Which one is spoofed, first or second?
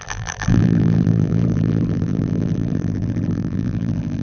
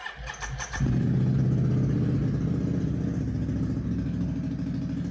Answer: first